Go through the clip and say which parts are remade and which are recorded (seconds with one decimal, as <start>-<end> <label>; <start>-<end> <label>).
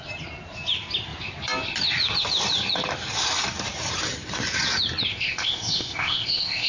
0.0-5.1 recorded; 5.1-6.7 remade